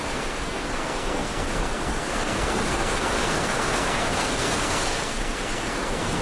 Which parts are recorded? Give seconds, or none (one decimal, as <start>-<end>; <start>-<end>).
none